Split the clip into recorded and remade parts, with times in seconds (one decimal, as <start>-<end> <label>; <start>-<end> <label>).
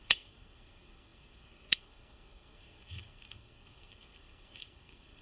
0.0-5.2 remade